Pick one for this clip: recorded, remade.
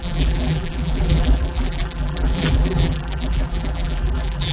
remade